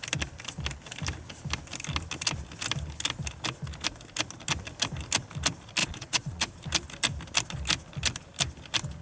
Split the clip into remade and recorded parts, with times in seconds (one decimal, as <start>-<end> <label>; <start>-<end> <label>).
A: 0.0-5.8 recorded; 5.8-6.4 remade; 6.4-9.0 recorded